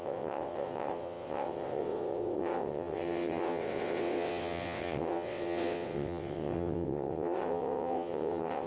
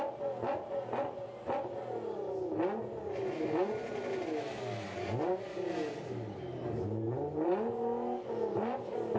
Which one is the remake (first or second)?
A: first